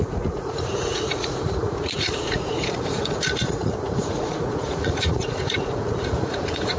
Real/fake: fake